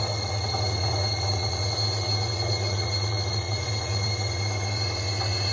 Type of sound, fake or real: fake